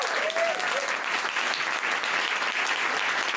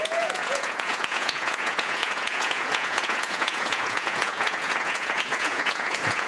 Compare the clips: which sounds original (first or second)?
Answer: first